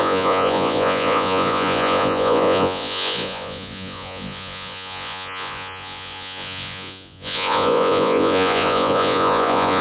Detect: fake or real fake